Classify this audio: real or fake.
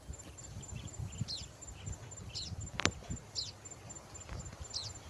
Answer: real